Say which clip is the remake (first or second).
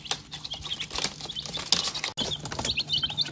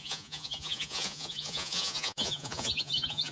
second